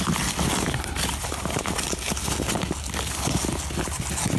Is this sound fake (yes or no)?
no